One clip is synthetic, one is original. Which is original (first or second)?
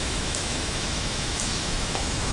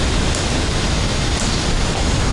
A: second